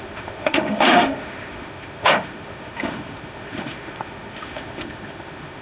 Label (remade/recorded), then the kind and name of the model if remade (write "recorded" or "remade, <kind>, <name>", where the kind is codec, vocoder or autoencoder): remade, autoencoder, DAC-VAE